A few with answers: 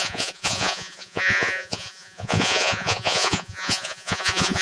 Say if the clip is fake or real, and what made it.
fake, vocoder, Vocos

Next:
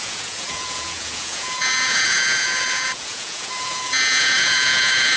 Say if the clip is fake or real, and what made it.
fake, vocoder, Vocos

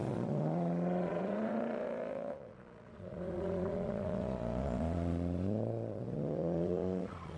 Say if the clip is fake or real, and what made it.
fake, vocoder, Vocos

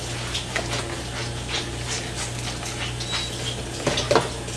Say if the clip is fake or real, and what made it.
real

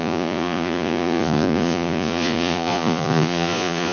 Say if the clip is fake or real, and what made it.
fake, vocoder, Vocos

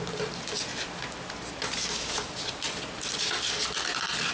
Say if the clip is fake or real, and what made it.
real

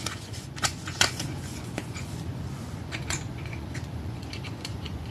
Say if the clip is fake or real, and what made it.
fake, vocoder, Vocos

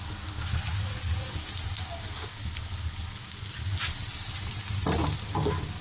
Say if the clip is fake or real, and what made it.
real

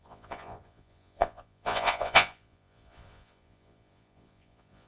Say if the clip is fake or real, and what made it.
fake, vocoder, Vocos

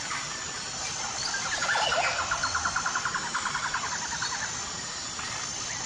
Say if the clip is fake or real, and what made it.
real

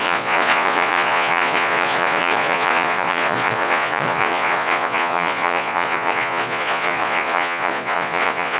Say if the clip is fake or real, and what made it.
fake, vocoder, Vocos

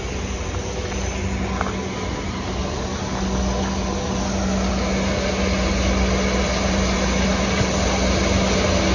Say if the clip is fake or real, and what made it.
real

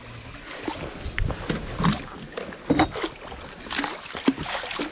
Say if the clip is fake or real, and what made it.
real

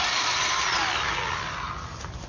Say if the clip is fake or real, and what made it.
real